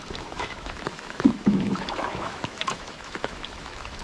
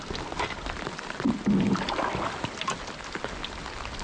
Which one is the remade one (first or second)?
first